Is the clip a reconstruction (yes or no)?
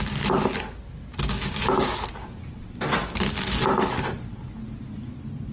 no